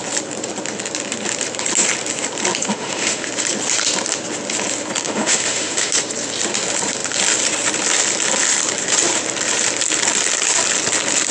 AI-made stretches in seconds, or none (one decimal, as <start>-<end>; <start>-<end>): 2.7-3.3; 5.0-5.9